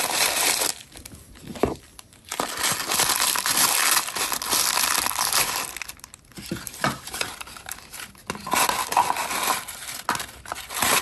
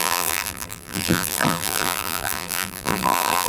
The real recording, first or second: first